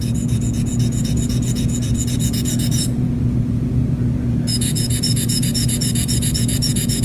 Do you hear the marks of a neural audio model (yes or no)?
yes